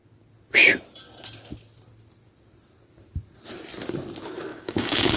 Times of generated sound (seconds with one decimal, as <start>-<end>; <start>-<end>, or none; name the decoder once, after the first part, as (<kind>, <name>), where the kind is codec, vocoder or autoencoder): 4.5-5.2 (codec, DAC)